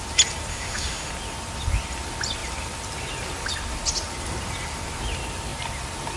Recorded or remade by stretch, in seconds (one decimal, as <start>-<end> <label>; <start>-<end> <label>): 0.0-0.5 recorded; 0.5-1.1 remade; 1.1-6.2 recorded